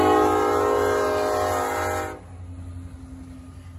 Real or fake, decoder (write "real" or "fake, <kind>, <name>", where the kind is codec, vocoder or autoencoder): real